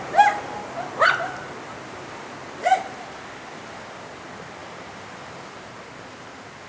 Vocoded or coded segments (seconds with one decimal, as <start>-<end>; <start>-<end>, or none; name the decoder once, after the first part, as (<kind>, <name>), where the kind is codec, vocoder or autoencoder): none